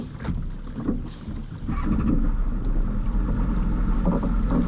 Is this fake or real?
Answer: real